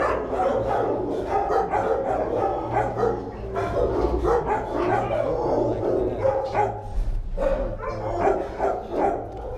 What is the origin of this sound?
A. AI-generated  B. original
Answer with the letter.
B